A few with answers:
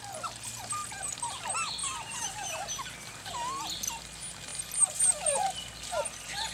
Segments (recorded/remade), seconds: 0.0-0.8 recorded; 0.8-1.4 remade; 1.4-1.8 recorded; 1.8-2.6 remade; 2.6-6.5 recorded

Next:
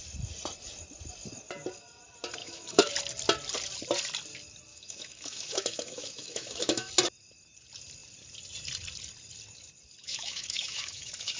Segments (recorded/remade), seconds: 0.0-2.4 recorded; 2.4-2.9 remade; 2.9-4.7 recorded; 4.7-6.9 remade; 6.9-10.0 recorded; 10.0-11.4 remade

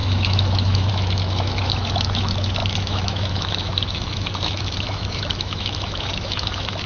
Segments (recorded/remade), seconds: 0.0-6.9 remade

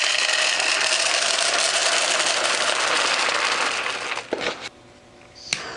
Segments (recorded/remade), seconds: 0.0-5.8 recorded

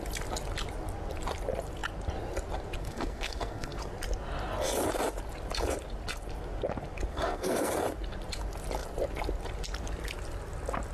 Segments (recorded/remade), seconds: 0.0-2.8 recorded; 2.8-3.8 remade; 3.8-7.1 recorded; 7.1-7.8 remade; 7.8-10.9 recorded

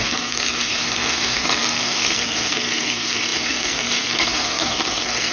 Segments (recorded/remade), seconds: 0.0-5.3 remade

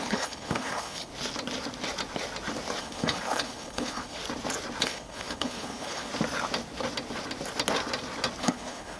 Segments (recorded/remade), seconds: 0.0-1.1 remade; 1.1-2.8 recorded; 2.8-4.2 remade; 4.2-4.8 recorded; 4.8-6.1 remade; 6.1-8.4 recorded; 8.4-9.0 remade